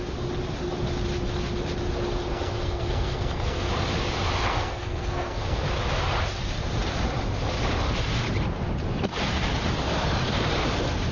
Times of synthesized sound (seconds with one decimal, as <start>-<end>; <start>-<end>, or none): 2.3-3.7; 4.5-5.6